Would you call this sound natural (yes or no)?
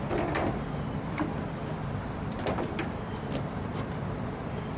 yes